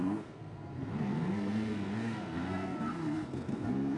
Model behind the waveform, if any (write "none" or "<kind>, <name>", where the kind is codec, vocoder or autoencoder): codec, SNAC